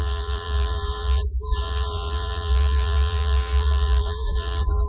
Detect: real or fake fake